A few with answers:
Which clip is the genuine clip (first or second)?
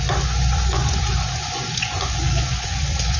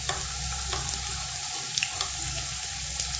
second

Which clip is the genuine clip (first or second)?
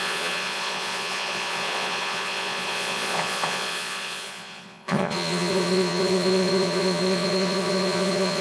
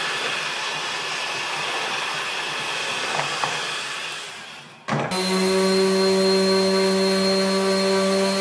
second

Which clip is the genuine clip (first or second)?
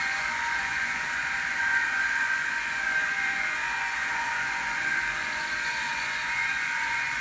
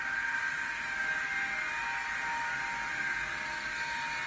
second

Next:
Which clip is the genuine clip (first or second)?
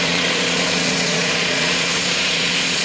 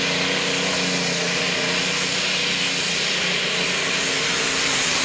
second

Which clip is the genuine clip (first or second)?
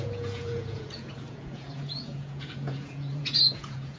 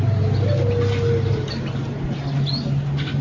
second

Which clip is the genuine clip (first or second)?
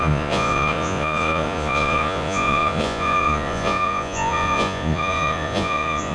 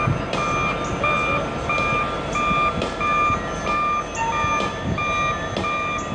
second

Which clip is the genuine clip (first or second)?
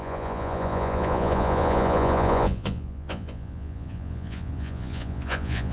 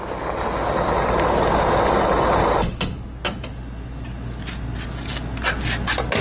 second